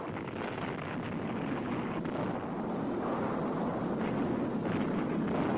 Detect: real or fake real